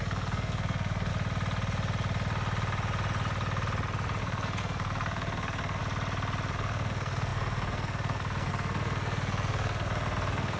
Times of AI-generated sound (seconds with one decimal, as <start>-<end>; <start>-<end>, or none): 0.0-1.1; 4.2-5.8; 6.5-10.6